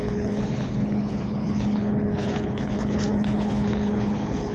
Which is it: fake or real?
fake